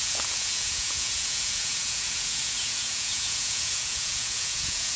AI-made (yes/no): yes